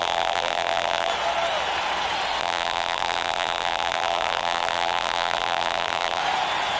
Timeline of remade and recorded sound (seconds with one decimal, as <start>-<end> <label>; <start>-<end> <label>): 0.0-1.1 remade; 1.1-2.4 recorded; 2.4-6.2 remade; 6.2-6.8 recorded